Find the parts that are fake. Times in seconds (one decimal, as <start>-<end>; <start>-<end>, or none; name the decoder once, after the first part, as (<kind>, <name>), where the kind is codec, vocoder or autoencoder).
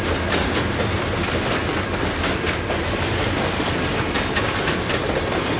1.0-4.4 (codec, DAC)